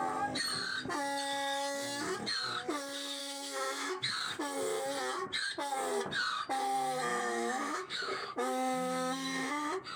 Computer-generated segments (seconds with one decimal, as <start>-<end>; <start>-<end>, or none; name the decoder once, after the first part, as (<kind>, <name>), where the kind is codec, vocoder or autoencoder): 3.2-4.1 (autoencoder, DAC-VAE); 7.1-9.5